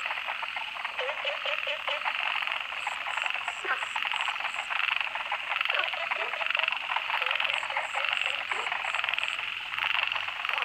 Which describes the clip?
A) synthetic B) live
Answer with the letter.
B